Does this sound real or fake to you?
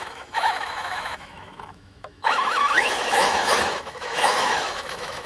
fake